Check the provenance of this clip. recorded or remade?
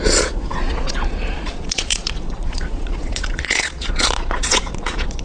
remade